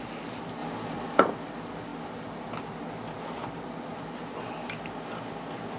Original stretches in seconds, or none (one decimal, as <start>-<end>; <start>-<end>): 0.0-5.8